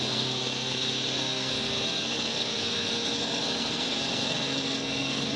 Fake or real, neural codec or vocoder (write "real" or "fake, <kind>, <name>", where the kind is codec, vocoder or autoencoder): fake, codec, SNAC